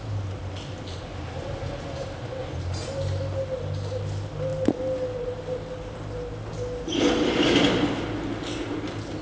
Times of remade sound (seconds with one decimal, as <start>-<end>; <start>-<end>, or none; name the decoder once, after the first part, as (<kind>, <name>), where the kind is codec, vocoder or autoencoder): none

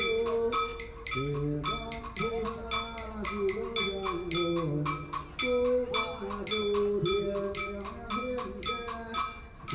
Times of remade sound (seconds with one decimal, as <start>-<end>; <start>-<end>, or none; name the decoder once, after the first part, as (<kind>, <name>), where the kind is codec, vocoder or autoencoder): none

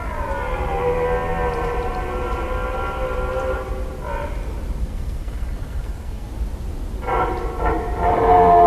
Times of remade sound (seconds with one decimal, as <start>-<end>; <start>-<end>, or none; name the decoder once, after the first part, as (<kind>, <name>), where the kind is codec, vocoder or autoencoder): 4.8-6.3 (codec, SNAC)

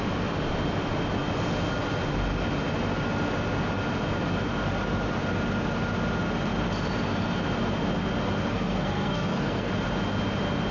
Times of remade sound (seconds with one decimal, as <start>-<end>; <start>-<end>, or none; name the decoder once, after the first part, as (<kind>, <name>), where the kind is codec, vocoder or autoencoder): 8.5-9.7 (codec, SNAC)

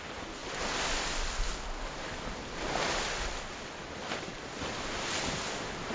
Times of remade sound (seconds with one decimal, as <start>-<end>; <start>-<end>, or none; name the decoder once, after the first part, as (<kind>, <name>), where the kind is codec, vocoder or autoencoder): none